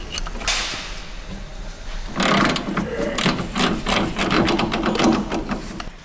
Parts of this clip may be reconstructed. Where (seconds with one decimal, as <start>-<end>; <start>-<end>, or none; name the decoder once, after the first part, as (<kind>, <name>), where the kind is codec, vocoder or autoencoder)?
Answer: none